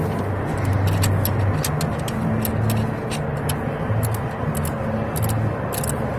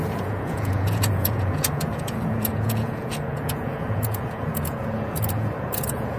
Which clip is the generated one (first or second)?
second